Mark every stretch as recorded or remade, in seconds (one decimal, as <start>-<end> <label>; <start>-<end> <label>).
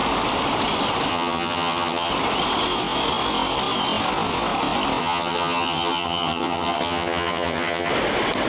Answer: 0.0-1.1 recorded; 1.1-2.1 remade; 2.1-5.0 recorded; 5.0-7.9 remade; 7.9-8.5 recorded